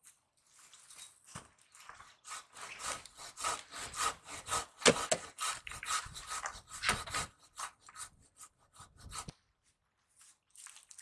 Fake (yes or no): no